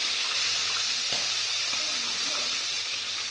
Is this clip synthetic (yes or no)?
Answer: no